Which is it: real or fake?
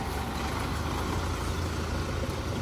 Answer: real